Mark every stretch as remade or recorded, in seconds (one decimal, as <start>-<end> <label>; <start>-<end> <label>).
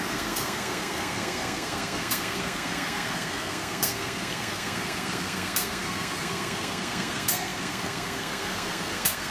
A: 0.0-9.3 remade